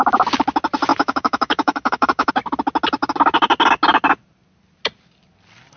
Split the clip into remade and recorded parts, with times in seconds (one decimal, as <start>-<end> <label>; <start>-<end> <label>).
0.0-0.9 recorded; 0.9-2.3 remade; 2.3-5.8 recorded